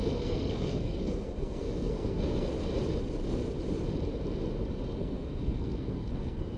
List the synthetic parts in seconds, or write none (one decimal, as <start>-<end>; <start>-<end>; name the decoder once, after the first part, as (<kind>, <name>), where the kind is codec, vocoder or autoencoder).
0.0-2.5 (codec, SNAC); 5.0-6.6

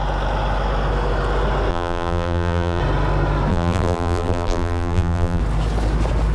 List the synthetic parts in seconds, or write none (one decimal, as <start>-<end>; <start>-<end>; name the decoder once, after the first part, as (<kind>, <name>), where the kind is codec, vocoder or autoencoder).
1.7-2.8 (vocoder, BigVGAN v2); 3.5-5.4

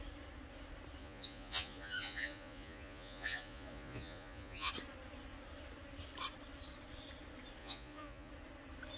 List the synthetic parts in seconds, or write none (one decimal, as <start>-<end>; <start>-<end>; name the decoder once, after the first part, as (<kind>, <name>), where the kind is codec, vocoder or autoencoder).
1.0-4.7 (vocoder, Vocos); 7.6-8.3

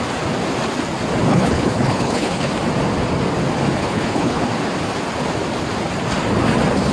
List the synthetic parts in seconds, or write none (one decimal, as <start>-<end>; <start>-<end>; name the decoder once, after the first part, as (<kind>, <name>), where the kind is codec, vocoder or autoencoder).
1.3-2.5 (codec, HILCodec); 3.8-4.4

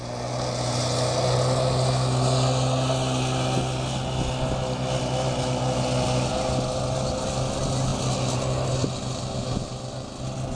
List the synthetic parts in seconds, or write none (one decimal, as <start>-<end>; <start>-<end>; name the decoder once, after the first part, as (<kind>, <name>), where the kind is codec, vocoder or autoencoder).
none

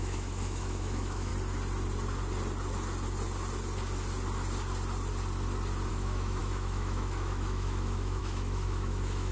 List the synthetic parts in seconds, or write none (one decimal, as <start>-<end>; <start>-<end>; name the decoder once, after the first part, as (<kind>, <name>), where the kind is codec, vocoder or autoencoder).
0.0-1.3 (autoencoder, DAC-VAE); 5.9-9.3

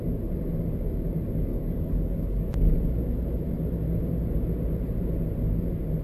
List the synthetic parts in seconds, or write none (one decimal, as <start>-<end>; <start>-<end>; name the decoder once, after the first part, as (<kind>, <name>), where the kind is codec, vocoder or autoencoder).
1.5-2.5 (codec, DAC)